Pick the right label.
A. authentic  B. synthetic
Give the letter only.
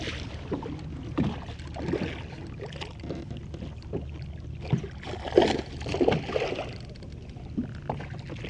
A